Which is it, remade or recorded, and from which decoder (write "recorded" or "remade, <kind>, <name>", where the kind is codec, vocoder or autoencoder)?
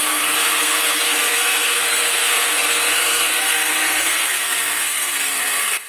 remade, codec, SNAC